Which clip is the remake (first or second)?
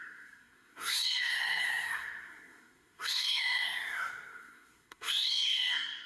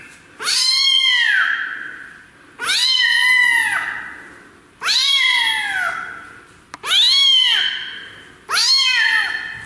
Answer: first